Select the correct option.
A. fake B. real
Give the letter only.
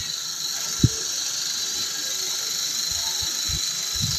B